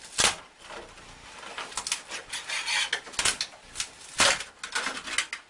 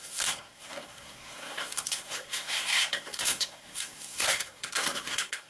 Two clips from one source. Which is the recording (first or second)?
first